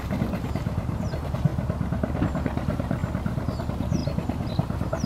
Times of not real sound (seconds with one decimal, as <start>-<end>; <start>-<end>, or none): 0.0-1.5; 2.3-3.0; 3.6-5.1